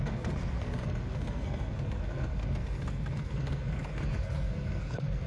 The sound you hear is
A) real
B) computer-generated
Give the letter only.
B